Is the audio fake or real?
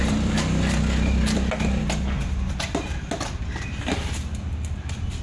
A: real